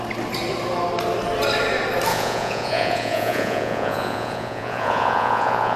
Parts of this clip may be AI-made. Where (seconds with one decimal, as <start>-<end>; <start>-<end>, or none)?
2.1-5.8